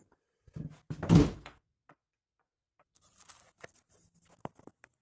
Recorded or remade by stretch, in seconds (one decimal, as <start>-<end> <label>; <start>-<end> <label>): 0.0-1.3 recorded; 1.3-3.0 remade; 3.0-5.0 recorded